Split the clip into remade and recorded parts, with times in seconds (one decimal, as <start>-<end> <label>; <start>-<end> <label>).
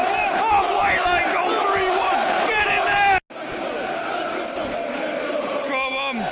0.0-6.3 recorded